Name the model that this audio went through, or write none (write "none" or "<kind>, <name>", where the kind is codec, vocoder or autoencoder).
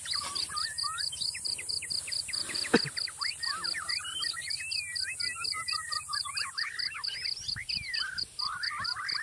none